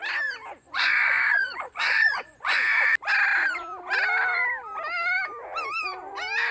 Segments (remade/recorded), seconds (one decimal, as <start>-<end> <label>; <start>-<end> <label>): 0.0-0.6 recorded; 0.6-2.6 remade; 2.6-6.5 recorded